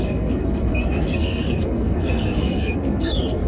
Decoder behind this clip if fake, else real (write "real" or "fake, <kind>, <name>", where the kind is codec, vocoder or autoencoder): fake, codec, SNAC